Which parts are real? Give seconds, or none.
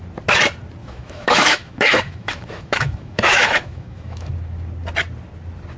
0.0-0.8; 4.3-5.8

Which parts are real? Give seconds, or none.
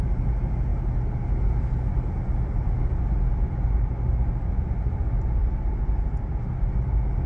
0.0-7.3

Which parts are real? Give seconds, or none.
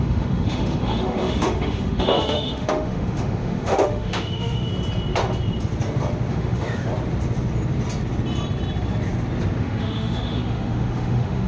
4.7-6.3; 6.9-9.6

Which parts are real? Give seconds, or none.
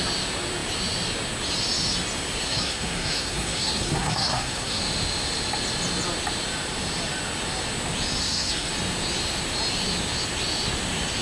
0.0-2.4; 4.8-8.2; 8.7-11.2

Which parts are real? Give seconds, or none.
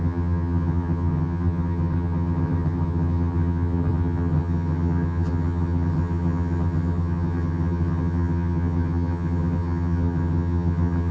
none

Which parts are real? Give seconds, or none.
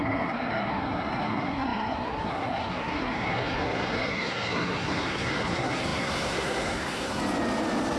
7.2-8.0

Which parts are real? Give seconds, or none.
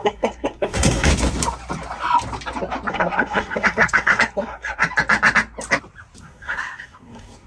1.1-2.9; 4.8-6.2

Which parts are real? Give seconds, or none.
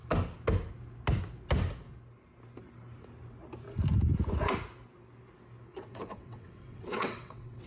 0.0-5.7